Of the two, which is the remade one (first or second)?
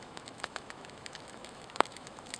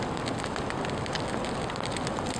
first